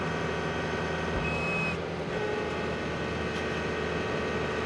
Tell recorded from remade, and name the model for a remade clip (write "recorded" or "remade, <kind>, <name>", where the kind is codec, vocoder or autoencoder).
recorded